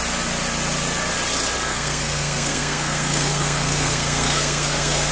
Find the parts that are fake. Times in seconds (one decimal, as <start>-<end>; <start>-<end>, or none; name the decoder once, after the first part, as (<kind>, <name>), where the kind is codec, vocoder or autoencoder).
1.7-5.1 (codec, SNAC)